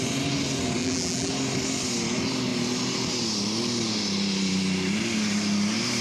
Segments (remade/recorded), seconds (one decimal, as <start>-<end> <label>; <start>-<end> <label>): 0.0-0.8 recorded; 0.8-1.3 remade; 1.3-6.0 recorded